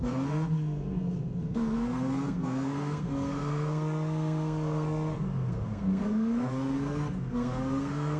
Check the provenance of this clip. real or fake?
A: fake